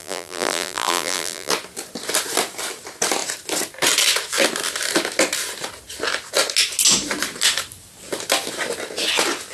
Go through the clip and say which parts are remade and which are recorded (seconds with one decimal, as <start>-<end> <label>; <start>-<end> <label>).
0.0-1.5 remade; 1.5-9.5 recorded